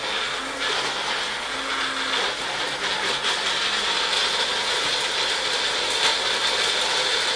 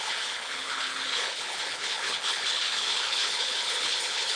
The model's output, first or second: second